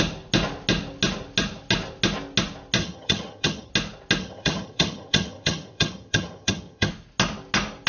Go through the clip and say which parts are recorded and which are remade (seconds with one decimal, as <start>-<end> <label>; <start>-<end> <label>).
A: 0.0-2.8 recorded; 2.8-3.7 remade; 3.7-4.2 recorded; 4.2-6.9 remade; 6.9-7.9 recorded